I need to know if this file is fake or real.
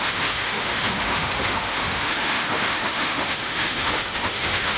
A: fake